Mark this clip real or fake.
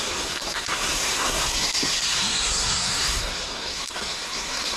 fake